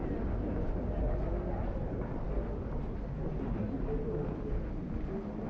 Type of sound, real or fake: real